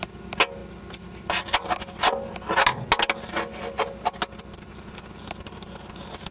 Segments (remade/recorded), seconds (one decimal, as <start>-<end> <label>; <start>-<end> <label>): 0.0-6.3 recorded